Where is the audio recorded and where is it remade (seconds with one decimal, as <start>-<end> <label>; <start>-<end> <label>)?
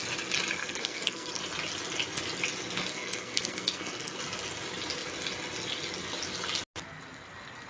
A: 0.0-0.6 recorded; 0.6-1.4 remade; 1.4-2.9 recorded; 2.9-4.2 remade; 4.2-7.7 recorded